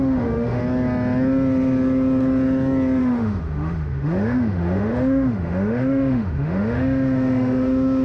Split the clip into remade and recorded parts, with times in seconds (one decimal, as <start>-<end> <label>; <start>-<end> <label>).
0.0-0.6 remade; 0.6-3.0 recorded; 3.0-8.0 remade